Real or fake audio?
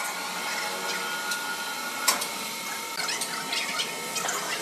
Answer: real